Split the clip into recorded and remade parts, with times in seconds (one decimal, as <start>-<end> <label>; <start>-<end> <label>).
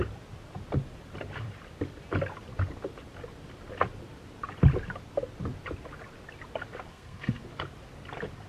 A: 0.0-6.9 recorded; 6.9-7.4 remade; 7.4-8.5 recorded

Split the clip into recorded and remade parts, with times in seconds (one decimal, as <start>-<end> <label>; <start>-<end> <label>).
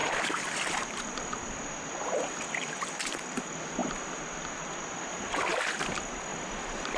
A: 0.0-1.0 remade; 1.0-7.0 recorded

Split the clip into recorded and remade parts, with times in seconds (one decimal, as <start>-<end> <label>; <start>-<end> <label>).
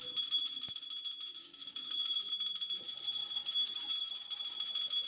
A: 0.0-1.4 recorded; 1.4-2.3 remade; 2.3-3.2 recorded; 3.2-4.1 remade; 4.1-5.1 recorded